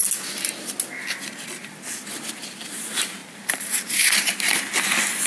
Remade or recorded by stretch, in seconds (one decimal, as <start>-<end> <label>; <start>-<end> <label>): 0.0-3.2 recorded; 3.2-4.6 remade; 4.6-5.3 recorded